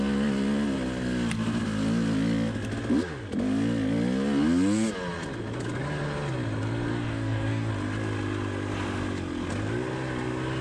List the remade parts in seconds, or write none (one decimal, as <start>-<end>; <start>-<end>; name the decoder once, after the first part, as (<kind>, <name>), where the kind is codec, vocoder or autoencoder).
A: 6.9-7.7 (codec, DAC)